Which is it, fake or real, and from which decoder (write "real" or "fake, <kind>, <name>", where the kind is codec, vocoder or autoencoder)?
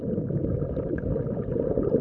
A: real